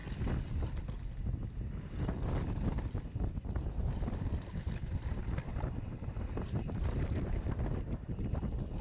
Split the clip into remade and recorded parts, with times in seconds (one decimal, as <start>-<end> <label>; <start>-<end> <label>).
0.0-8.8 recorded